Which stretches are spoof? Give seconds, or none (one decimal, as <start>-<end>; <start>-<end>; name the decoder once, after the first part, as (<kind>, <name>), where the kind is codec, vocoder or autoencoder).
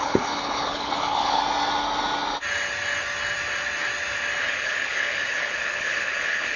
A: 0.0-1.4 (codec, HILCodec); 4.4-6.6